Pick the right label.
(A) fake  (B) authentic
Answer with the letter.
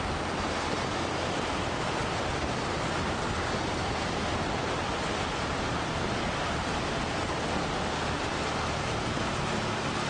B